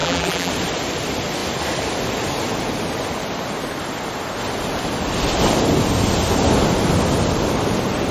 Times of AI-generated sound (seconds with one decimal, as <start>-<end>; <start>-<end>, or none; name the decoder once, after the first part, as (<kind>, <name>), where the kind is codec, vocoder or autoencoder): 0.0-0.5 (vocoder, BigVGAN v2)